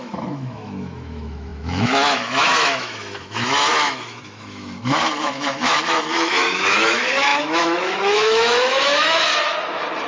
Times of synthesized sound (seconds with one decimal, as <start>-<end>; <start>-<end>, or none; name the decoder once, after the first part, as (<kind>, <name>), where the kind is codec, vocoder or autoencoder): 0.0-9.3 (autoencoder, DAC-VAE)